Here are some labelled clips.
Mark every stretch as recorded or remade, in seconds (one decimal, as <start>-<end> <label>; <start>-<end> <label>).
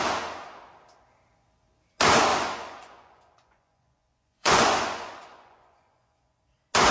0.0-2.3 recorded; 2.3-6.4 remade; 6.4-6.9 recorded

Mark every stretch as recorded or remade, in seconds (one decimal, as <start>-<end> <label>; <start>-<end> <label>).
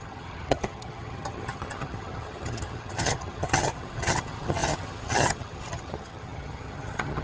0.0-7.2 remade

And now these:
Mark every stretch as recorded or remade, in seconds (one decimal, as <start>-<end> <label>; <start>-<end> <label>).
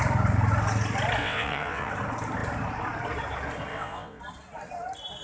0.0-1.2 recorded; 1.2-1.9 remade; 1.9-3.7 recorded; 3.7-4.2 remade; 4.2-5.2 recorded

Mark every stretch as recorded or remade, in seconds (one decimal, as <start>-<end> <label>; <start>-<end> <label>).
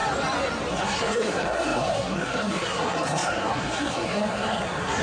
0.0-0.7 recorded; 0.7-5.0 remade